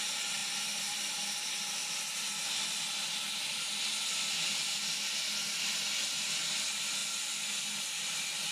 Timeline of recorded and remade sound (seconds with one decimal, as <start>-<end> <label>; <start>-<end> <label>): 0.0-8.5 recorded